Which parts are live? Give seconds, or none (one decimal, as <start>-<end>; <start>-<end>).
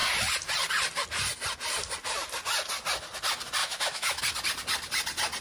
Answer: 0.0-3.6; 4.2-5.4